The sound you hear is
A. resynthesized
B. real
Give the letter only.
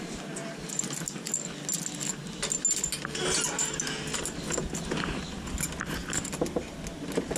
B